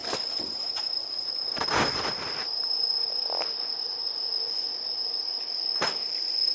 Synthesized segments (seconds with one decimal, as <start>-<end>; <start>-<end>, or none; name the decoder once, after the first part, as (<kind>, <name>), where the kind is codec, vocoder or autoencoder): none